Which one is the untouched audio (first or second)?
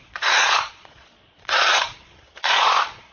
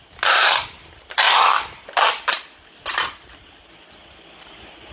second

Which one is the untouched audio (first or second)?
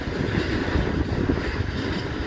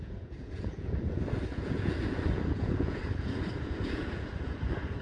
first